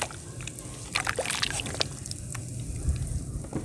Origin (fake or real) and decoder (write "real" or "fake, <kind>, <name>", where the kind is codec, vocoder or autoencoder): fake, vocoder, BigVGAN v2